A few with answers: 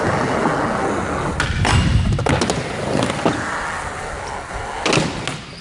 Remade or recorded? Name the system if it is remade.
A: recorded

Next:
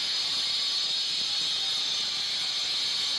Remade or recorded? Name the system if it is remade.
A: recorded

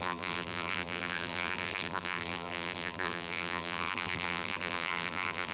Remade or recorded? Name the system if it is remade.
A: remade, vocoder, BigVGAN v2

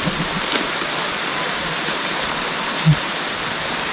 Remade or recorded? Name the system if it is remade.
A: recorded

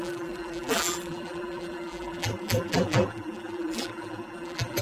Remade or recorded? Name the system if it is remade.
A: remade, vocoder, BigVGAN v2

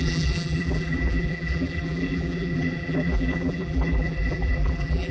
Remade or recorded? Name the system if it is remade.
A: remade, vocoder, BigVGAN v2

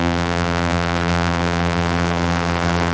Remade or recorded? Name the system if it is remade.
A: remade, vocoder, BigVGAN v2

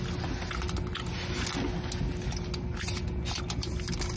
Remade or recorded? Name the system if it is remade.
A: recorded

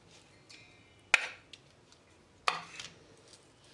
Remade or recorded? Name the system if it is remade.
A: recorded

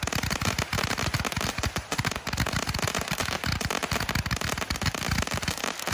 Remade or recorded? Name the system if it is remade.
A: recorded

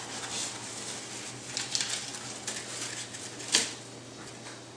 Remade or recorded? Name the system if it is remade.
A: recorded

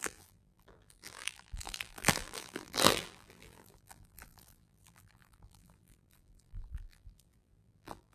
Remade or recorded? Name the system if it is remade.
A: remade, vocoder, BigVGAN v2